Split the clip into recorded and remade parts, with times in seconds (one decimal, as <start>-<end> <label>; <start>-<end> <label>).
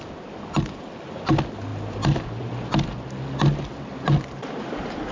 0.0-5.1 recorded